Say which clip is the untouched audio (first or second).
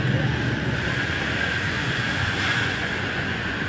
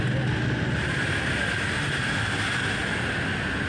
second